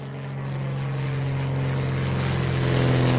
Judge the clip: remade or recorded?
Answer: recorded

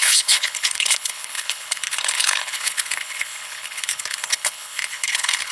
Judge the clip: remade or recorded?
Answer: remade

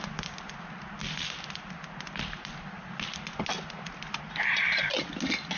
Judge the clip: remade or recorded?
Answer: recorded